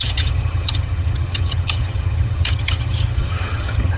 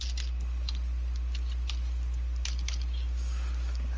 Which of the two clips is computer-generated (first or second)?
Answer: first